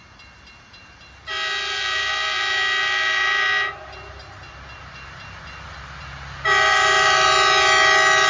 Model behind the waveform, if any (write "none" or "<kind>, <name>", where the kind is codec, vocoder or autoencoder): none